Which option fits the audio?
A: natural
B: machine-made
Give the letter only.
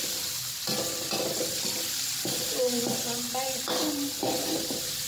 A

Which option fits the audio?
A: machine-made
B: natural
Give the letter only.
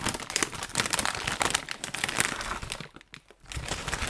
B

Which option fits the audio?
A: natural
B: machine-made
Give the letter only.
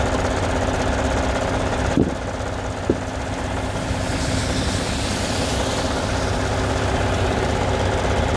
A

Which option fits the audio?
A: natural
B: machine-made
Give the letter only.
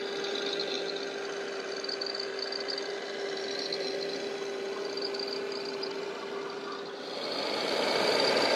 A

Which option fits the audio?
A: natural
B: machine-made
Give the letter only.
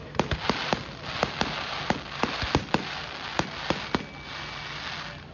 A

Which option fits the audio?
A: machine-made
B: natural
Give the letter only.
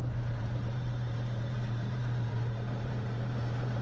A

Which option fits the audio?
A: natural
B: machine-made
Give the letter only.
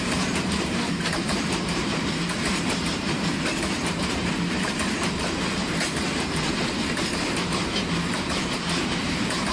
B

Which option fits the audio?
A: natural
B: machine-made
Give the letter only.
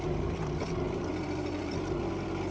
A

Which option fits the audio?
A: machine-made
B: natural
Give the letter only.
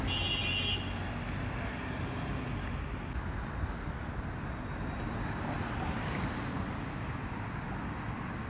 B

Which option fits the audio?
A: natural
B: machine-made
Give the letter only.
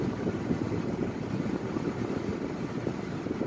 B